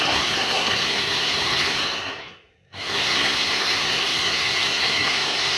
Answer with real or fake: fake